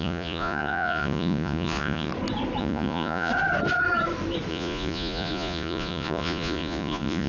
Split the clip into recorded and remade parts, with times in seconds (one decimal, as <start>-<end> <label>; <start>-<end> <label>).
0.0-2.1 remade; 2.1-2.6 recorded; 2.6-3.3 remade; 3.3-4.5 recorded; 4.5-7.3 remade